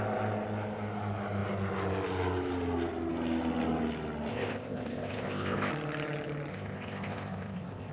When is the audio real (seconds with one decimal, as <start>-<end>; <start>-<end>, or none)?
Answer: 0.0-4.3; 5.7-6.5